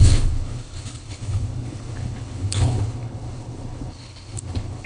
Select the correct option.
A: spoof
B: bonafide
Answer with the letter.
A